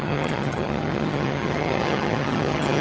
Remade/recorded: remade